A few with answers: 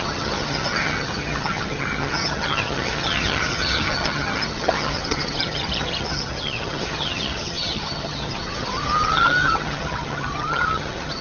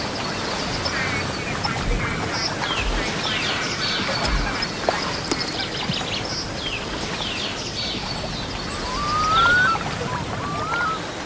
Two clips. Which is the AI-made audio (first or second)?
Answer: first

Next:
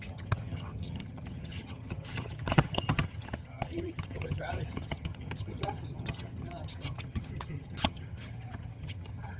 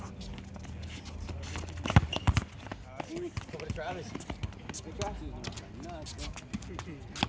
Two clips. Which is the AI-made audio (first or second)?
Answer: first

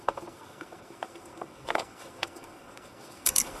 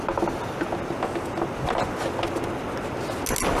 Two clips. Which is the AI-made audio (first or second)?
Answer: first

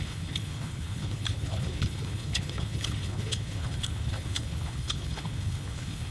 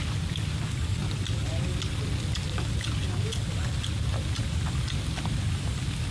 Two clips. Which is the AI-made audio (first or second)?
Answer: first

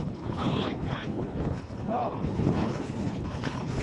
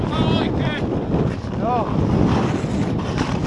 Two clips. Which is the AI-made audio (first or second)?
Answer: first